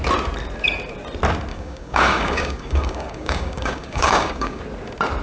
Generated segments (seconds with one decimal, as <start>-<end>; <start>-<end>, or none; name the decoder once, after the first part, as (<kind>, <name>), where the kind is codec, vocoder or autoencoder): 1.5-4.6 (codec, DAC)